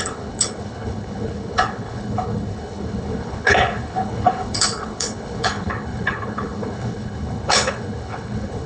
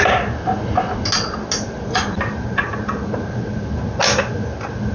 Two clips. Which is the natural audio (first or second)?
second